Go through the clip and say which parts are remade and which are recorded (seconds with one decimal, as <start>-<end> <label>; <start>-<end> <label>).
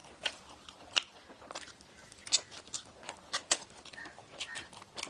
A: 0.0-5.1 recorded